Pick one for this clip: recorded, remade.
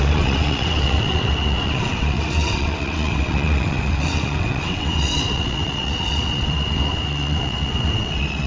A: remade